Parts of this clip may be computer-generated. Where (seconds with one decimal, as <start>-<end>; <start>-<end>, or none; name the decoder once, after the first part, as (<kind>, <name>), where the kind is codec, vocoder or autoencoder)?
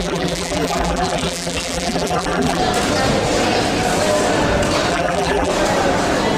0.0-2.6 (vocoder, BigVGAN v2); 4.9-5.5